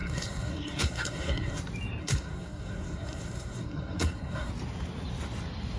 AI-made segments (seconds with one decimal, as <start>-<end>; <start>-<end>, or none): 0.0-1.6; 2.0-4.5